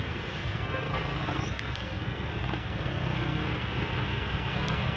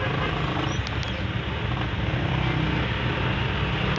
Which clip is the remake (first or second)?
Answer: first